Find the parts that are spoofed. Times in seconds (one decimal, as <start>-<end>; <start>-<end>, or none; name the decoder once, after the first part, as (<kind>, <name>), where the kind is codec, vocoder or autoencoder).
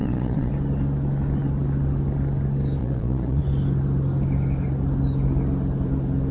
0.0-0.5 (vocoder, Vocos); 2.8-3.4